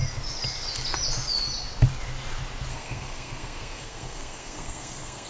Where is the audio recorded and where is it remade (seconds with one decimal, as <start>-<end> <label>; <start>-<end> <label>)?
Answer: 0.0-2.7 recorded; 2.7-5.3 remade